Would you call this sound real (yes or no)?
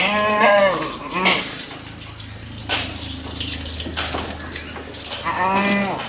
yes